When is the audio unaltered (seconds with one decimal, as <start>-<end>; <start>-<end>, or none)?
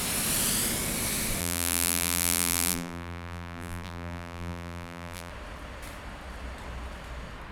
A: 0.0-1.4; 5.3-7.5